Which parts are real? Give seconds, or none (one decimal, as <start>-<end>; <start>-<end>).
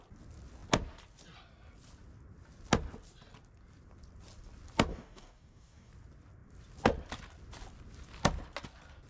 0.0-4.9; 5.9-9.1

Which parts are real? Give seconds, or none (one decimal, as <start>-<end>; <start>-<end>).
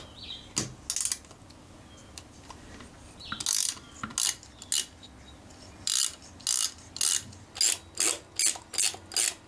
0.0-9.5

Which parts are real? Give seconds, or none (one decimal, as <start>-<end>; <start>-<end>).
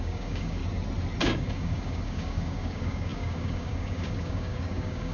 0.6-1.2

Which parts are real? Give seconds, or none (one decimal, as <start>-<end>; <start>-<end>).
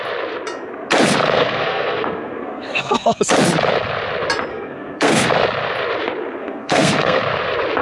0.0-1.2; 3.2-4.5; 5.3-6.4; 7.2-7.8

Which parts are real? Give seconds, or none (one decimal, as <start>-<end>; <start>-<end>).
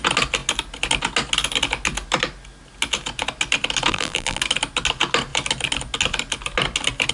0.0-3.9; 4.4-7.1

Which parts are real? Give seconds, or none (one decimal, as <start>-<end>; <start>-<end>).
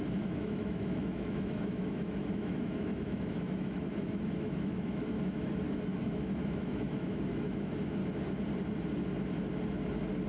8.0-10.3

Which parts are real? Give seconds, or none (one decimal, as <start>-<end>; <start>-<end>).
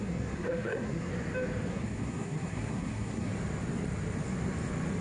1.1-1.7; 3.3-5.0